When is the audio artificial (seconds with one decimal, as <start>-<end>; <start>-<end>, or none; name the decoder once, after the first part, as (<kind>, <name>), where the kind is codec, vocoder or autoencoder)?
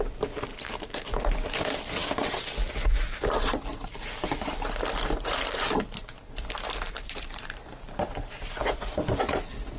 0.5-1.6 (vocoder, BigVGAN v2); 3.9-8.8